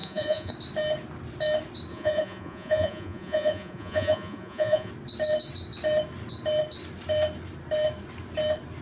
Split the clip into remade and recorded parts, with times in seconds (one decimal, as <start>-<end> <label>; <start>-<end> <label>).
0.0-0.5 remade; 0.5-1.9 recorded; 1.9-4.9 remade; 4.9-8.8 recorded